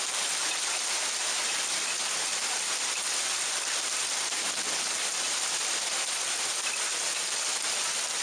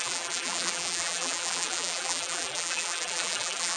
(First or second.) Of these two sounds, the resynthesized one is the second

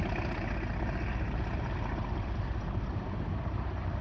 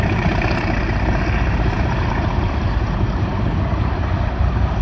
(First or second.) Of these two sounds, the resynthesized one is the second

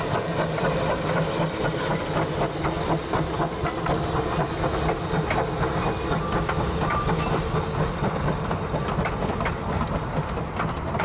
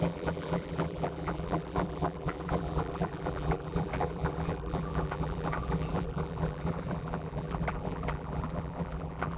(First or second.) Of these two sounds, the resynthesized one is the second